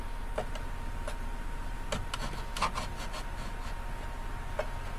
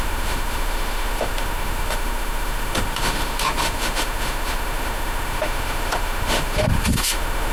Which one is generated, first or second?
second